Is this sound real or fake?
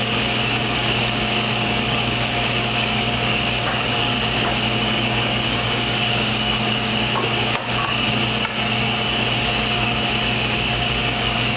fake